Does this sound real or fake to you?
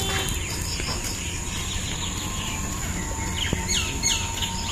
real